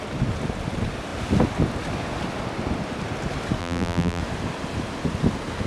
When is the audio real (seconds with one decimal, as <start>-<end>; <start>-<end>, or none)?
0.0-3.6; 4.2-5.7